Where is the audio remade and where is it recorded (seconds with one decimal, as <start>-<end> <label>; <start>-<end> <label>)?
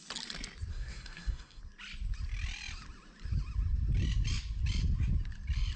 0.0-0.7 recorded; 0.7-1.6 remade; 1.6-5.8 recorded